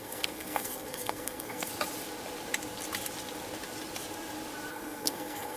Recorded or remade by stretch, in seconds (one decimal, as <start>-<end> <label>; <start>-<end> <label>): 0.0-1.7 remade; 1.7-4.7 recorded; 4.7-5.6 remade